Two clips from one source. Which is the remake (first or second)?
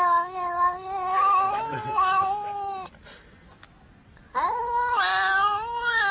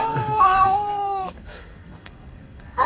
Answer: second